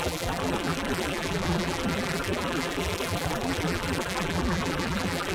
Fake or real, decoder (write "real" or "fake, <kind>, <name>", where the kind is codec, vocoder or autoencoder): fake, vocoder, BigVGAN v2